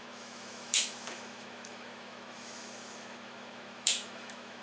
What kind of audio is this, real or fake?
fake